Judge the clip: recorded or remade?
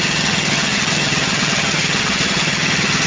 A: remade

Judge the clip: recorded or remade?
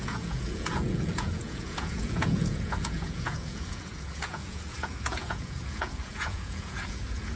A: remade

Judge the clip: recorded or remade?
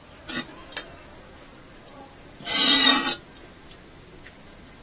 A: recorded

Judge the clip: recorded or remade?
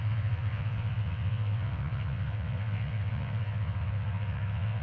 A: remade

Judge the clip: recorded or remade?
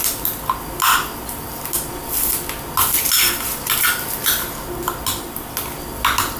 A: recorded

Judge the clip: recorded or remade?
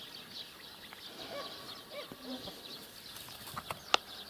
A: recorded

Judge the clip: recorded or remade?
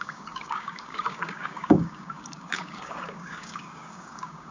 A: remade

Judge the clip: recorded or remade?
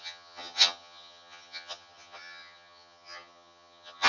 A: remade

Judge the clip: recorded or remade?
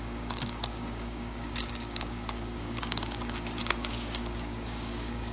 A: remade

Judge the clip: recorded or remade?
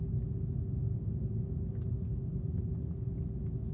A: recorded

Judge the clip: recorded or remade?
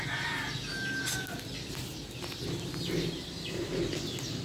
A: recorded